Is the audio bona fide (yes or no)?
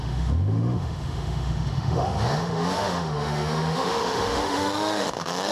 no